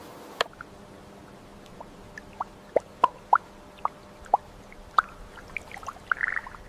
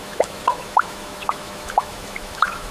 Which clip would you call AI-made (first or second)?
second